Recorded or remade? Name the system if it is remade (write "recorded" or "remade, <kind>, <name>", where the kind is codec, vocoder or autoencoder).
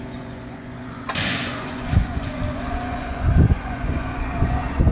remade, vocoder, Vocos